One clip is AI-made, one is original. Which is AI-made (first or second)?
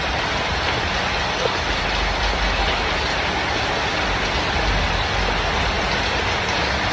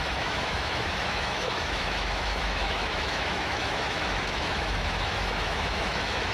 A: second